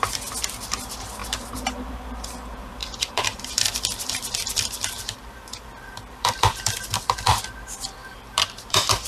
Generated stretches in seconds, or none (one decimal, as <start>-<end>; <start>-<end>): 1.2-1.9; 2.8-7.4; 8.0-9.1